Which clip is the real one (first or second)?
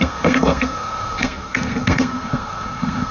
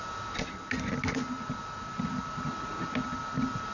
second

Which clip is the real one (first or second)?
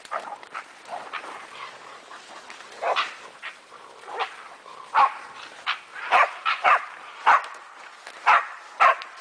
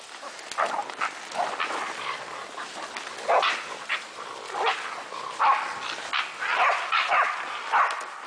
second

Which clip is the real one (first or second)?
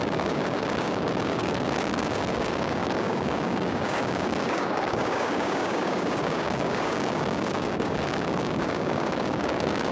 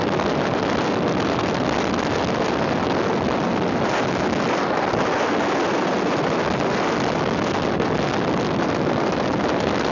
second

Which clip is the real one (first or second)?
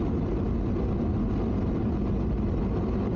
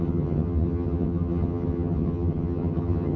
first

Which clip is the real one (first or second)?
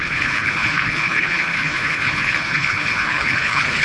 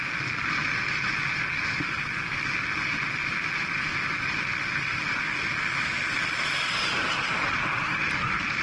second